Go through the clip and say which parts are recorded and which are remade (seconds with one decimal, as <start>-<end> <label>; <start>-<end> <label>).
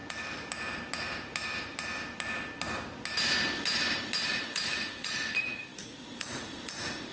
0.0-4.3 recorded; 4.3-7.1 remade